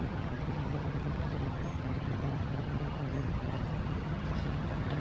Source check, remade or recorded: remade